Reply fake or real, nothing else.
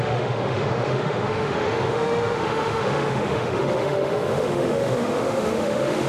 fake